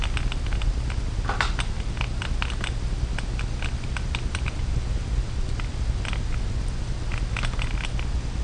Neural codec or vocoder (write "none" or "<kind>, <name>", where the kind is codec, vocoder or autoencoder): none